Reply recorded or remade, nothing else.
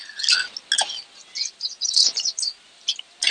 recorded